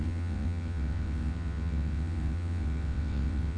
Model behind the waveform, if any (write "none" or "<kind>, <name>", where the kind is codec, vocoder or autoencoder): vocoder, WaveNeXt